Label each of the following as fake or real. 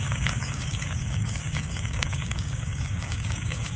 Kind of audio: fake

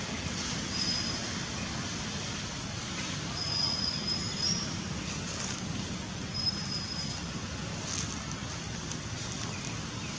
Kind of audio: real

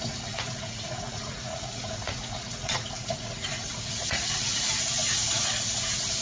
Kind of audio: fake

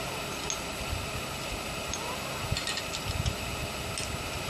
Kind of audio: real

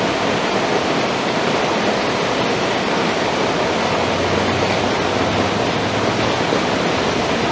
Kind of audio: real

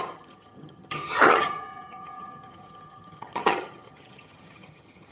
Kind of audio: fake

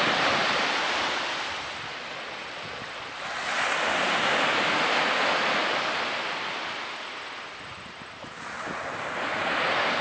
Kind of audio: real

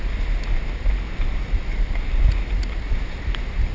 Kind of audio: real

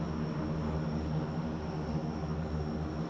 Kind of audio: real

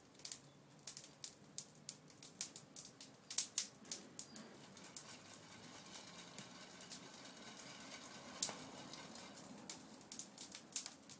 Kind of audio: real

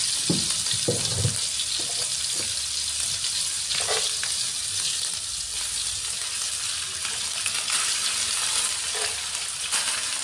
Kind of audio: real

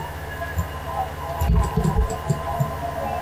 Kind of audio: real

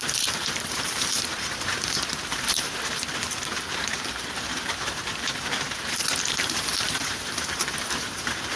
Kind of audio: fake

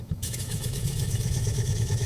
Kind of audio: fake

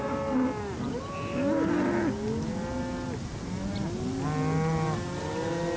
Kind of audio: real